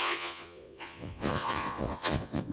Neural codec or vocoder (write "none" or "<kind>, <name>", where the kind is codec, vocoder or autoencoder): vocoder, Vocos